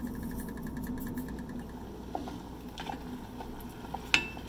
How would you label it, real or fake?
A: real